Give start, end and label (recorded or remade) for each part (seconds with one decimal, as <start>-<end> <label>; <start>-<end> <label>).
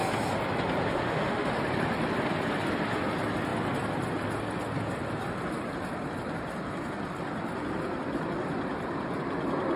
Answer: 0.0-0.9 recorded; 0.9-1.5 remade; 1.5-9.8 recorded